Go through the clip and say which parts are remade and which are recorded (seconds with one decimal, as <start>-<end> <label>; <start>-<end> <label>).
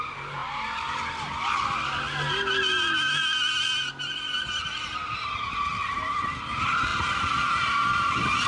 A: 0.0-8.5 recorded